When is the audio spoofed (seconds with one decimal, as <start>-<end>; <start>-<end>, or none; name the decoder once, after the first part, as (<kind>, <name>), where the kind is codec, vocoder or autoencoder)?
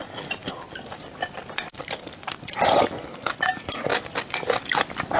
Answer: 0.4-3.5 (vocoder, BigVGAN v2); 3.9-5.2